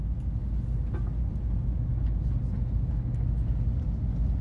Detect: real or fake real